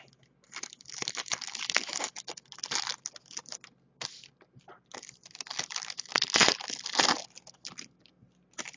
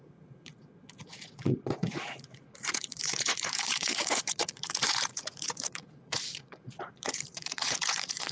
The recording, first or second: first